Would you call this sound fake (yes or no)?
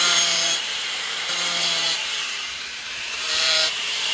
yes